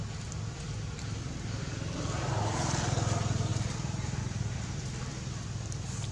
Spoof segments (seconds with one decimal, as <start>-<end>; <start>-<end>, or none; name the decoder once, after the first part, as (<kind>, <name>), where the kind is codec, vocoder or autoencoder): 3.5-4.2 (vocoder, BigVGAN v2)